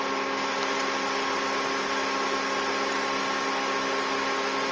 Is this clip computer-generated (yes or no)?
no